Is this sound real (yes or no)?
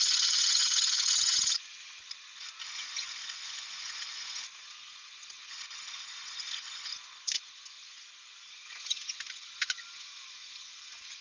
no